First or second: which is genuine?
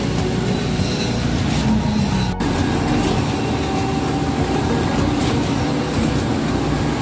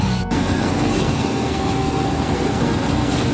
first